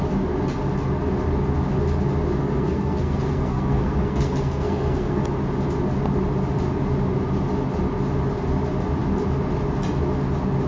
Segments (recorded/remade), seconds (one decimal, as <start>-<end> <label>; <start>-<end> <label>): 0.0-2.4 recorded; 2.4-5.2 remade; 5.2-10.7 recorded